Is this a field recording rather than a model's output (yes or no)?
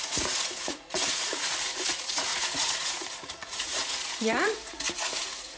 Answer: no